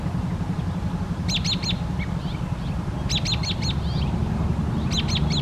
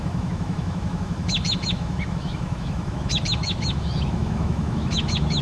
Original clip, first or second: first